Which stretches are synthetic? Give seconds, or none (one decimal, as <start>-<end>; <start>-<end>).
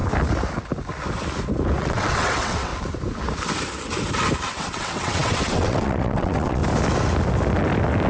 1.8-2.7; 4.6-6.6